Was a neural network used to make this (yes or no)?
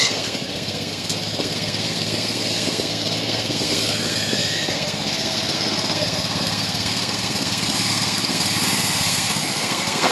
yes